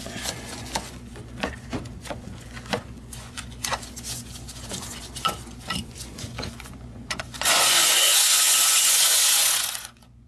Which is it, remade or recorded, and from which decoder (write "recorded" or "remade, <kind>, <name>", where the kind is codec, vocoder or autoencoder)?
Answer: remade, vocoder, Vocos